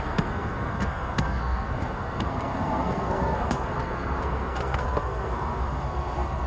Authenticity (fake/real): fake